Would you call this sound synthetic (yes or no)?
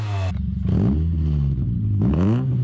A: no